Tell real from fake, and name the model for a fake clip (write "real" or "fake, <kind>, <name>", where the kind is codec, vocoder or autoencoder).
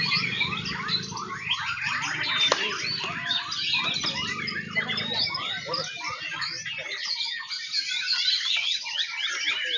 real